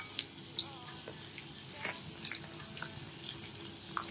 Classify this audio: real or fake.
real